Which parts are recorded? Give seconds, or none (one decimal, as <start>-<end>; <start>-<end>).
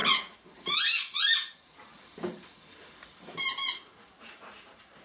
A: 0.0-5.0